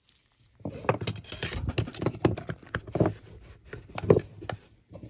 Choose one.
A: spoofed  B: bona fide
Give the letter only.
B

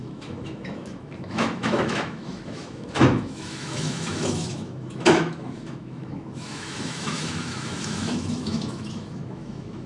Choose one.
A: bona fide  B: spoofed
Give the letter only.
B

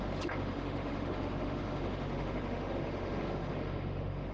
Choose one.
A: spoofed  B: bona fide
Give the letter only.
A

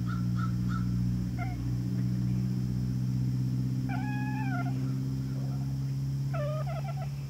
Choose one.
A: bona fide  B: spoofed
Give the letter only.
A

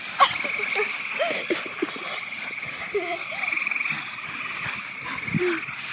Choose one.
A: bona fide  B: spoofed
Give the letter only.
A